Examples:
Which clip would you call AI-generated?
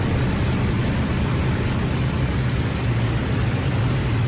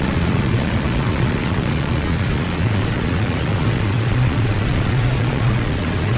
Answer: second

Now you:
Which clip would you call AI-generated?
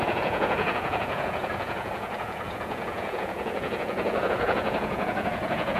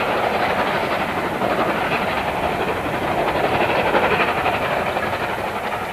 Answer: first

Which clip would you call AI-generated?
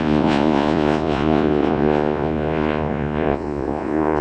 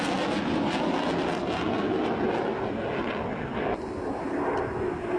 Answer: first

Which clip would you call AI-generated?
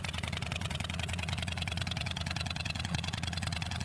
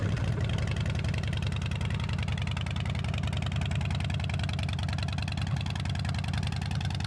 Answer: first